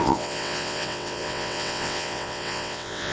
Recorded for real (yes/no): no